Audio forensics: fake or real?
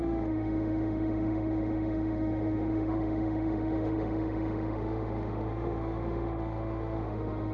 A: fake